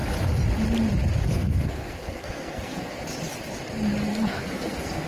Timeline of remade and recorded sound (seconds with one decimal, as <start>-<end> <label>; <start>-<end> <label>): 0.0-1.3 recorded; 1.3-3.0 remade; 3.0-4.1 recorded; 4.1-5.1 remade